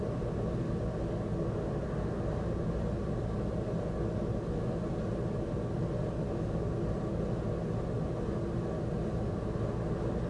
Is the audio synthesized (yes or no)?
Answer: no